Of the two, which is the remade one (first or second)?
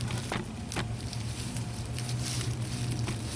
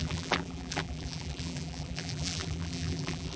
second